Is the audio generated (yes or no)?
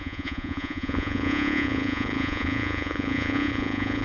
yes